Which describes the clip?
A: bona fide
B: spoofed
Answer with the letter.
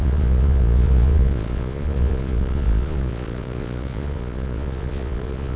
B